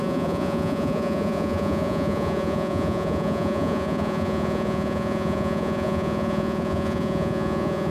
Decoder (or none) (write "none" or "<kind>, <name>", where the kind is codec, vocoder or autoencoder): vocoder, Vocos